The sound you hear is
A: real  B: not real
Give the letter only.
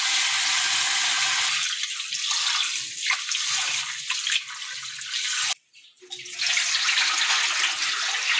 A